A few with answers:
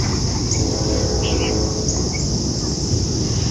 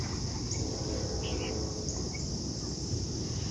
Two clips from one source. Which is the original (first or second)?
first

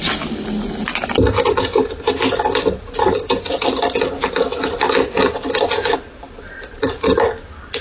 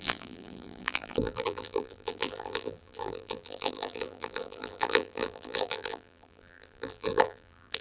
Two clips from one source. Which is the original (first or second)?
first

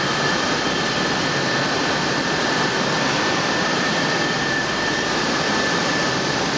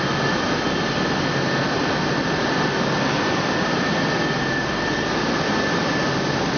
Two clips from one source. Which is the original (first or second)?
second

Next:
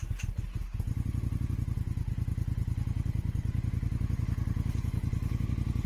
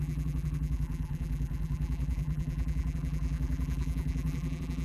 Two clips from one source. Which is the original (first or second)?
first